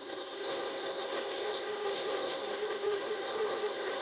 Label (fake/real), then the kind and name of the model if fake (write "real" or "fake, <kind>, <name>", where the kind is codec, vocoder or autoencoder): fake, codec, SNAC